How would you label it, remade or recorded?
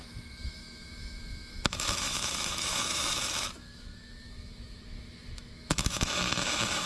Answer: remade